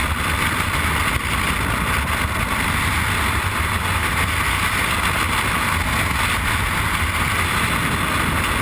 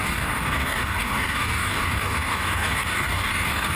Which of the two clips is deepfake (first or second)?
second